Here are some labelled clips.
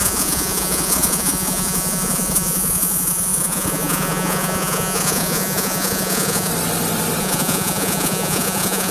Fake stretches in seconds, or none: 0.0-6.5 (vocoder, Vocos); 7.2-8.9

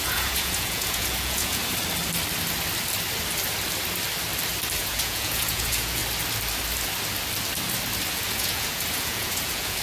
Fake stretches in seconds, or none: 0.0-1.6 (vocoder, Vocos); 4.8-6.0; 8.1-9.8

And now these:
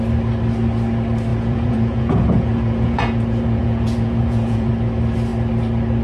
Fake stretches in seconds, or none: 1.3-4.7 (vocoder, Vocos)

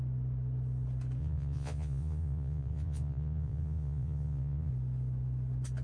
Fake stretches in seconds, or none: 1.2-4.7 (vocoder, Vocos)

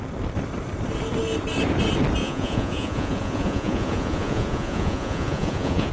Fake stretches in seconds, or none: 2.2-5.9 (vocoder, Vocos)

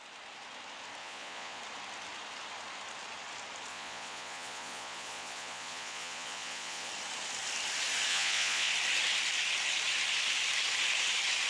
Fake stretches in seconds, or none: 1.0-1.6 (vocoder, Vocos); 3.7-6.9; 8.1-8.7

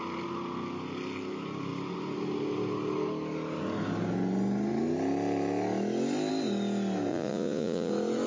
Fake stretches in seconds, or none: 7.1-7.9 (vocoder, Vocos)

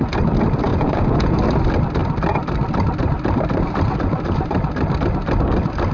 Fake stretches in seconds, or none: 0.7-1.4 (vocoder, Vocos)